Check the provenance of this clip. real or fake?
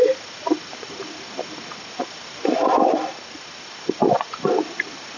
real